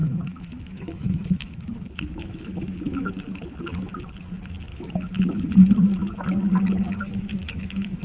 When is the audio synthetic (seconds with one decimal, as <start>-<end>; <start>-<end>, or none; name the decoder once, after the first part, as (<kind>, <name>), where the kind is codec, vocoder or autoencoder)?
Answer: 0.0-3.1 (autoencoder, DAC-VAE); 4.7-5.5; 7.0-8.0